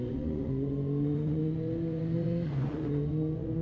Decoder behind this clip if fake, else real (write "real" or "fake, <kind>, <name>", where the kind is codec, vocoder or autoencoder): fake, vocoder, Vocos